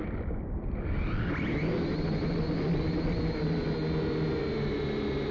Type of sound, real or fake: real